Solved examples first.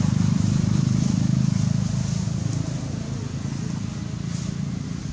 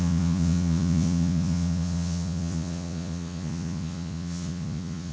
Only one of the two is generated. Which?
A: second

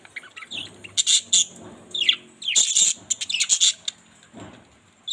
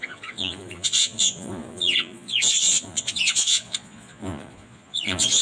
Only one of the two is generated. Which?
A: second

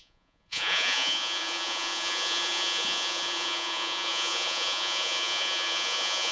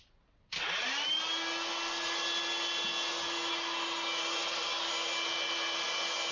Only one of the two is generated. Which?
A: first